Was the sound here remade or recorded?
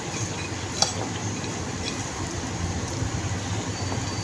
recorded